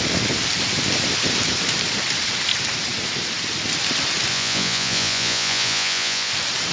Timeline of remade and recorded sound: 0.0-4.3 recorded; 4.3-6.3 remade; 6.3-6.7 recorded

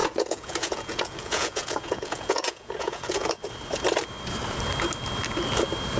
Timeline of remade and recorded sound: 0.0-3.3 remade; 3.3-6.0 recorded

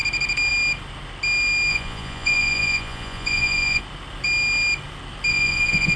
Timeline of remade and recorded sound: 0.0-1.7 recorded; 1.7-3.8 remade; 3.8-5.3 recorded; 5.3-6.0 remade

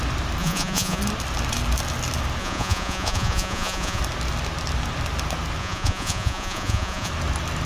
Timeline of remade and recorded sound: 0.0-0.4 recorded; 0.4-1.0 remade; 1.0-2.4 recorded; 2.4-4.0 remade; 4.0-5.6 recorded; 5.6-7.1 remade; 7.1-7.7 recorded

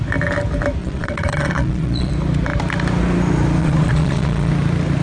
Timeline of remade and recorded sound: 0.0-0.8 recorded; 0.8-2.1 remade; 2.1-3.6 recorded; 3.6-4.5 remade; 4.5-5.0 recorded